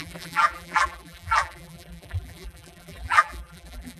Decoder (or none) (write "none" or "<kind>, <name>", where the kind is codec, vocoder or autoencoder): vocoder, BigVGAN v2